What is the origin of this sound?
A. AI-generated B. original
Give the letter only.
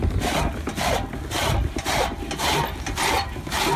B